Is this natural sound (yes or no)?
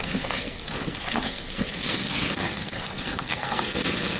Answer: no